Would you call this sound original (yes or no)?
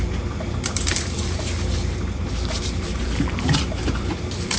no